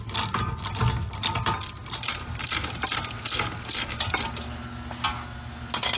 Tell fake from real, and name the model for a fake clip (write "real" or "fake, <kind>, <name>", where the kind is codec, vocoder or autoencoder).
real